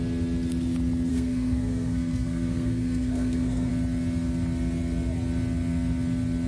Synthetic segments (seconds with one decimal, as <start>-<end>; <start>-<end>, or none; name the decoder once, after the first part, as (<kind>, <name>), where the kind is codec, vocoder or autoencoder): 1.1-3.7 (codec, SNAC)